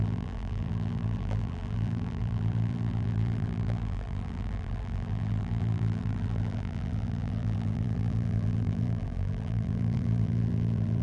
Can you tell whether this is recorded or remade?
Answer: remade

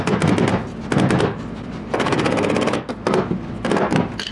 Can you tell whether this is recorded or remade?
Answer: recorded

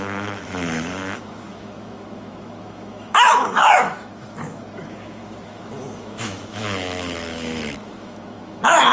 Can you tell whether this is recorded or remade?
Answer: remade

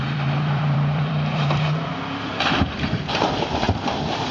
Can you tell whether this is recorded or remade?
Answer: remade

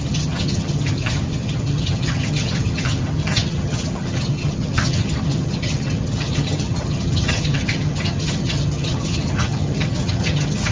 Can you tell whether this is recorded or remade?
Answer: remade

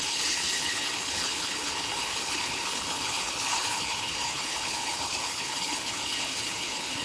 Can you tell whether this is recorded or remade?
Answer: remade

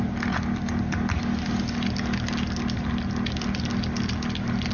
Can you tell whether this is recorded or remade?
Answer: recorded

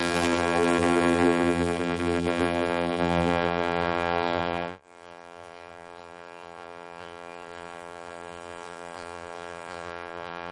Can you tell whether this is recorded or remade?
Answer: remade